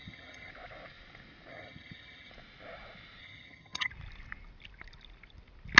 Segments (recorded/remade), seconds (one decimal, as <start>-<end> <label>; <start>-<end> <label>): 0.0-0.5 remade; 0.5-1.5 recorded; 1.5-2.3 remade; 2.3-3.2 recorded; 3.2-3.9 remade; 3.9-5.8 recorded